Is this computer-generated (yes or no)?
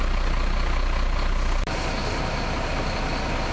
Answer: no